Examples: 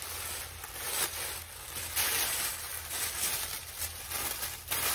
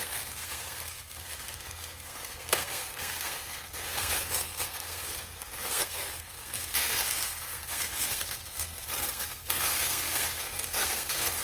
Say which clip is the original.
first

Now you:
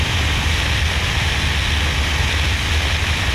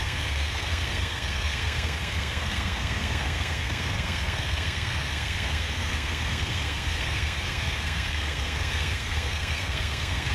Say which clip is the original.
first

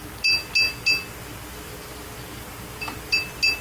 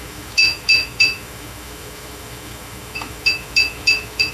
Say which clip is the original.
first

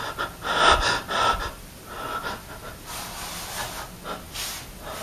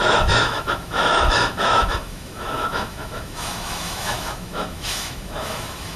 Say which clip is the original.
first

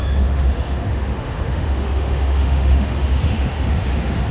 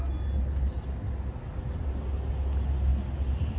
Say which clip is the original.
second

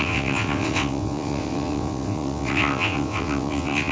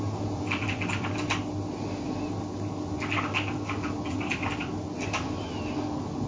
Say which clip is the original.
second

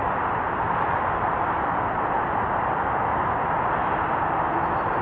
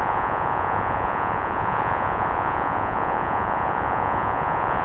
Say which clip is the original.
first